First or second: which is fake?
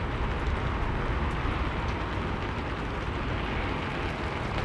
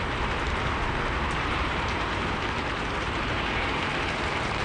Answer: second